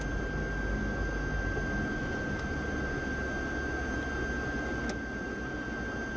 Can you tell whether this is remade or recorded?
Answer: recorded